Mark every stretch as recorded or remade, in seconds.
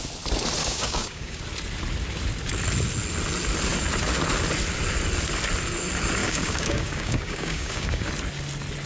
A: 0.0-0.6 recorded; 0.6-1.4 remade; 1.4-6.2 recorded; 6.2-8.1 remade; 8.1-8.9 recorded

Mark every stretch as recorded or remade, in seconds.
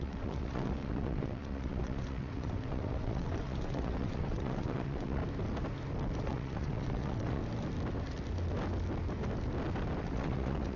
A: 0.0-5.2 remade; 5.2-6.2 recorded; 6.2-7.4 remade; 7.4-10.0 recorded; 10.0-10.8 remade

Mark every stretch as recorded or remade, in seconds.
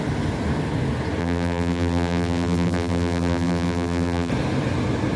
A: 0.0-1.2 recorded; 1.2-4.3 remade; 4.3-5.2 recorded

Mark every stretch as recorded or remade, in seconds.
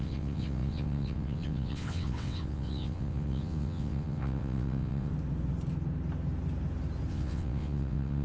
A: 0.0-5.1 remade; 5.1-7.1 recorded; 7.1-8.2 remade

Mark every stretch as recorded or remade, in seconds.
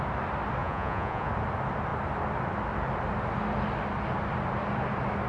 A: 0.0-0.6 recorded; 0.6-1.3 remade; 1.3-5.3 recorded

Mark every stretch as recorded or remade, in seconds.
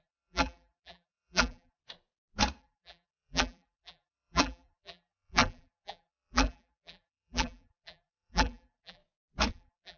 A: 0.0-1.8 remade; 1.8-2.6 recorded; 2.6-9.0 remade; 9.0-9.5 recorded; 9.5-10.0 remade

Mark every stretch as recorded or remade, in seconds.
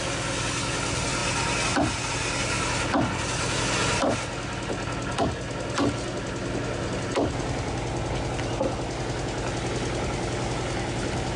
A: 0.0-11.4 recorded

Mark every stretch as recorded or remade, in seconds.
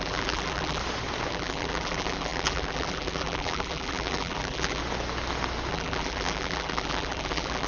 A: 0.0-0.8 remade; 0.8-1.3 recorded; 1.3-4.8 remade; 4.8-5.7 recorded; 5.7-7.7 remade